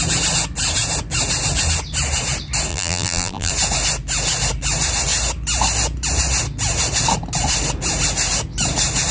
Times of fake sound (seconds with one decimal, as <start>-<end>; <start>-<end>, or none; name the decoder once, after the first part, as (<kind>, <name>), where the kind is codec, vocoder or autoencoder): 2.7-3.5 (vocoder, BigVGAN v2)